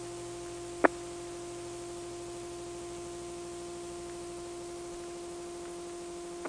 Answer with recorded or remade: recorded